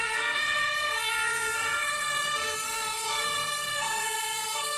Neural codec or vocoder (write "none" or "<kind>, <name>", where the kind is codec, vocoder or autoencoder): codec, SNAC